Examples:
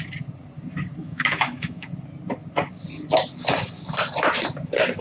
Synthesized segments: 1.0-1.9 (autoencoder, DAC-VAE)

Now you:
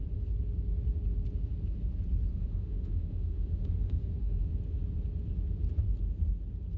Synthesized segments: 2.3-4.5 (autoencoder, DAC-VAE)

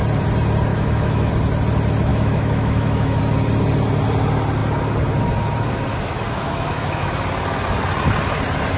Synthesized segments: 0.7-1.3 (autoencoder, DAC-VAE); 2.1-3.2; 5.9-7.1

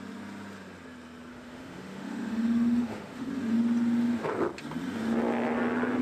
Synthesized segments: 1.3-3.3 (autoencoder, DAC-VAE)

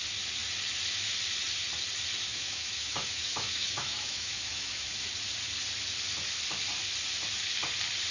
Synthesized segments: 2.3-5.1 (autoencoder, DAC-VAE)

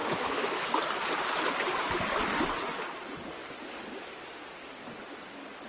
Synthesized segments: 0.0-0.7 (autoencoder, DAC-VAE)

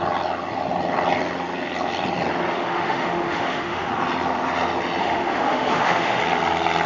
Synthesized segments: 2.5-3.9 (autoencoder, DAC-VAE); 5.0-6.2